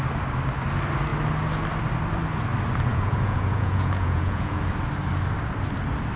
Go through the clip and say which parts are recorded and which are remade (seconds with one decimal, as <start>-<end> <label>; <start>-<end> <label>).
0.0-2.9 recorded; 2.9-4.6 remade; 4.6-6.2 recorded